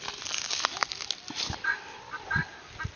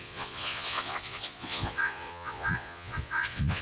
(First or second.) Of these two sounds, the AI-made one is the second